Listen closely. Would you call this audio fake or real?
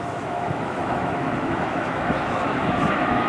fake